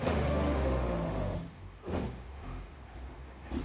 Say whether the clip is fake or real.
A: fake